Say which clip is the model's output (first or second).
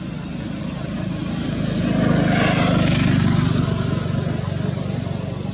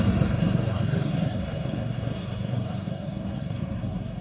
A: second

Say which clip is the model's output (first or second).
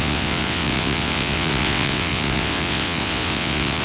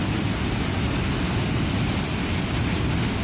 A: first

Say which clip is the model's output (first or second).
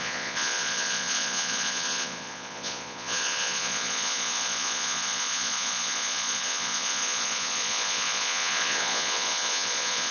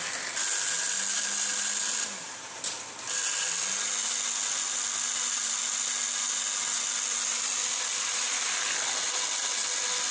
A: first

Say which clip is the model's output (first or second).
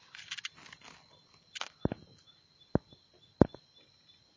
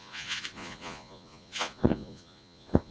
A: second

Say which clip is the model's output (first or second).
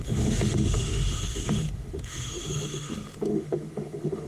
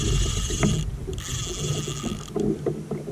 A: first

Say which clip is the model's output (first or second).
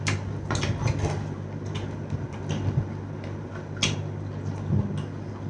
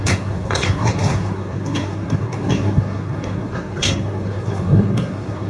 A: second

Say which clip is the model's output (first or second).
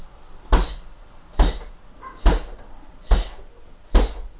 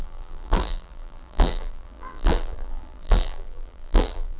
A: second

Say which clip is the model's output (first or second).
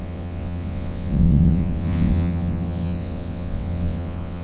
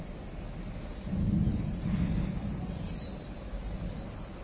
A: first